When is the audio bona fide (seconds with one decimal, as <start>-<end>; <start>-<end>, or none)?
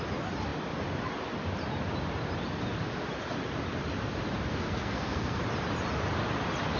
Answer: 0.0-4.5; 5.4-6.8